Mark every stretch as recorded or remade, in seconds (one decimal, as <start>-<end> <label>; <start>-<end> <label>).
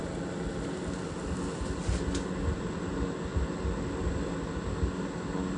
0.0-5.6 recorded